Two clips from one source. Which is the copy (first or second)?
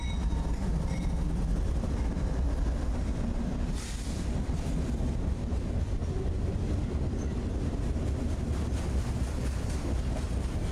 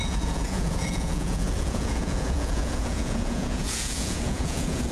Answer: second